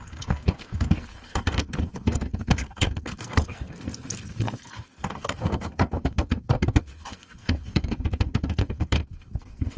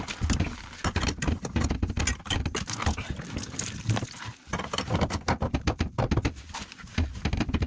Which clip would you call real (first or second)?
second